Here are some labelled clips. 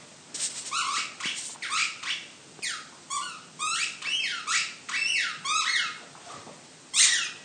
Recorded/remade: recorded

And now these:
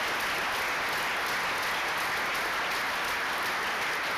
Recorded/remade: recorded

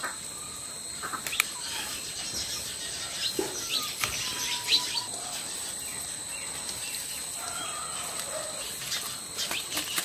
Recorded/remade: recorded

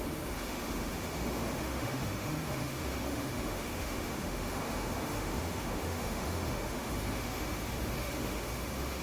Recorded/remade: remade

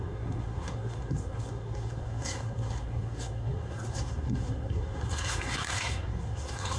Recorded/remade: remade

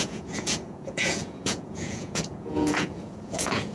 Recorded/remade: remade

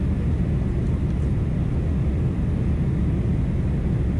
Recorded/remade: recorded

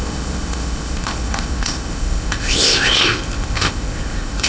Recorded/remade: remade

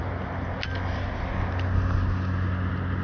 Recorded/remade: recorded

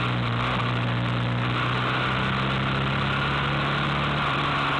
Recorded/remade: recorded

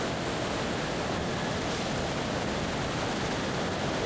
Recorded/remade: recorded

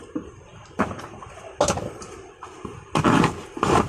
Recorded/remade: recorded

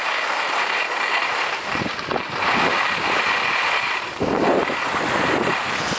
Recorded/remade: recorded